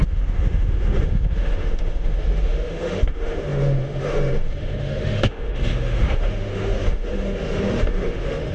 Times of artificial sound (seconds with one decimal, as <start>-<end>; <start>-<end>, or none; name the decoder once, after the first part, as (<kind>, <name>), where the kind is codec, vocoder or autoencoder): 0.0-8.5 (autoencoder, DAC-VAE)